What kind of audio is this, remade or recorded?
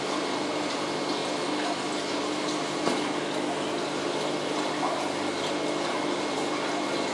recorded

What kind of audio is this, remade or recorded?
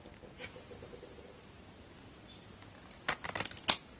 recorded